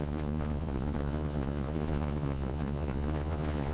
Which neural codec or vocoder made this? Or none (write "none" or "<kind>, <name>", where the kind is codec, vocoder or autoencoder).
vocoder, Vocos